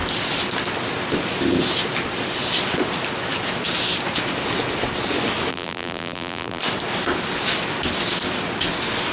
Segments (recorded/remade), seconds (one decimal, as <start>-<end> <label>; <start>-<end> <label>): 0.0-5.5 recorded; 5.5-6.6 remade; 6.6-9.1 recorded